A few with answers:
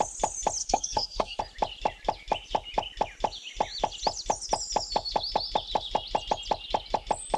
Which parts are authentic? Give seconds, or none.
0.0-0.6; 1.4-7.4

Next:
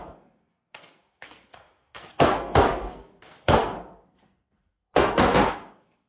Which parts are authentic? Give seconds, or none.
none

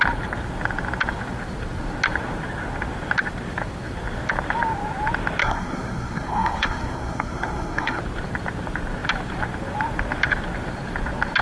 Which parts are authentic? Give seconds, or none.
0.0-5.4; 8.0-11.4